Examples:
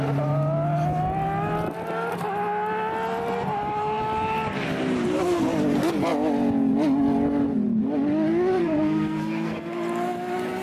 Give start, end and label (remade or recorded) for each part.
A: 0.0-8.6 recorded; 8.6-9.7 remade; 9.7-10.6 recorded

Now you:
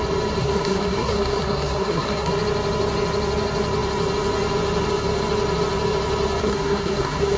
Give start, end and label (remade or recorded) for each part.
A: 0.0-0.4 recorded; 0.4-2.3 remade; 2.3-6.4 recorded; 6.4-7.4 remade

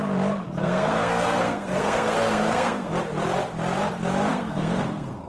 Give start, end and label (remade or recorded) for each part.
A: 0.0-0.6 recorded; 0.6-2.9 remade; 2.9-4.3 recorded; 4.3-5.3 remade

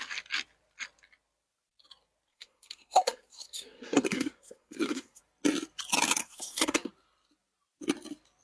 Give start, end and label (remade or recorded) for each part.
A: 0.0-2.3 recorded; 2.3-5.2 remade; 5.2-6.2 recorded; 6.2-6.9 remade; 6.9-8.4 recorded

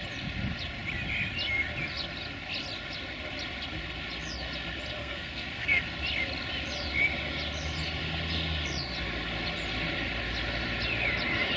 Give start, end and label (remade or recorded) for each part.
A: 0.0-5.0 recorded; 5.0-5.8 remade; 5.8-11.6 recorded

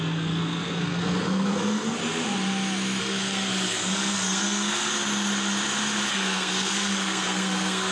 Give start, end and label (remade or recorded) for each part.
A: 0.0-2.0 remade; 2.0-3.0 recorded; 3.0-4.9 remade; 4.9-6.1 recorded; 6.1-7.9 remade